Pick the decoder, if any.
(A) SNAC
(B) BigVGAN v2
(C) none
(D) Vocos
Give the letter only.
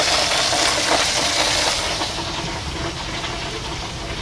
C